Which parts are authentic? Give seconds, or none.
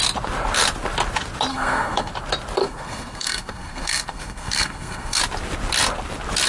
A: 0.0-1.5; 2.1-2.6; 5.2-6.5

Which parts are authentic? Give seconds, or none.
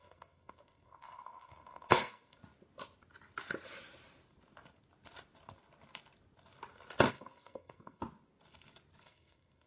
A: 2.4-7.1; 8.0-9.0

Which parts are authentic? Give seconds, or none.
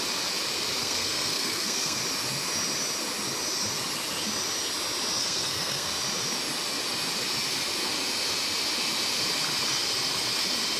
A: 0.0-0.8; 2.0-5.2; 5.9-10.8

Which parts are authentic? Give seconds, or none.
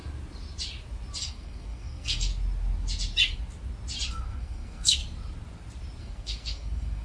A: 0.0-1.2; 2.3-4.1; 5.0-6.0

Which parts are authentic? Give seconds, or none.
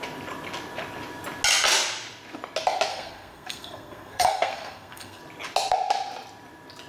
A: 0.0-2.9; 5.2-6.9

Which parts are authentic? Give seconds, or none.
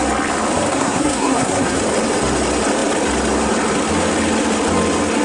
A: 0.0-0.7; 1.8-5.2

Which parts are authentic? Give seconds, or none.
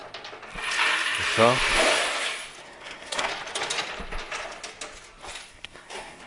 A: 0.0-2.6; 3.3-5.5